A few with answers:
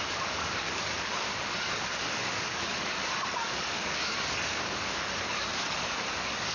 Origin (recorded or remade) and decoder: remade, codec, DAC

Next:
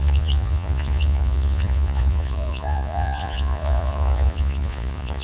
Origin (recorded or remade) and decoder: remade, vocoder, Vocos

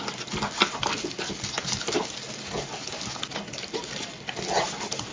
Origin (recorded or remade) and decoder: recorded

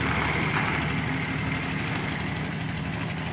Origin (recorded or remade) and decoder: recorded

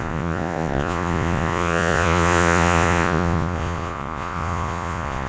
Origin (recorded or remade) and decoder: remade, vocoder, Vocos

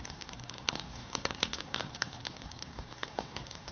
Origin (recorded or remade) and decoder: remade, codec, SNAC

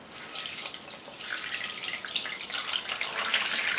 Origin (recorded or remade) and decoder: recorded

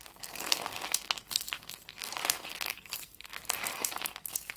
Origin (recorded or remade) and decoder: remade, codec, SNAC